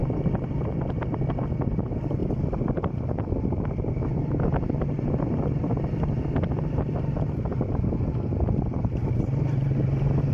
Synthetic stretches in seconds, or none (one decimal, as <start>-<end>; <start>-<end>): 0.0-0.9; 2.2-6.9